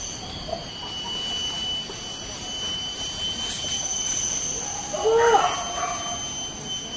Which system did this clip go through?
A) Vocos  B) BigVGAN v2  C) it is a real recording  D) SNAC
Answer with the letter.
C